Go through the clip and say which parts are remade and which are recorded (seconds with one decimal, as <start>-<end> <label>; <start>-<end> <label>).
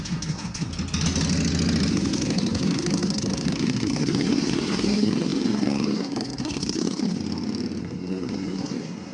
0.0-0.7 remade; 0.7-1.9 recorded; 1.9-7.2 remade; 7.2-7.8 recorded; 7.8-9.1 remade